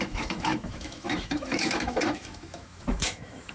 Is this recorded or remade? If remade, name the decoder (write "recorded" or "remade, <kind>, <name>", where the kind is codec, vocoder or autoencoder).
remade, autoencoder, DAC-VAE